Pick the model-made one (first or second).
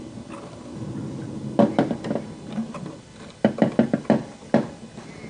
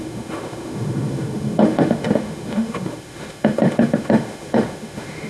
second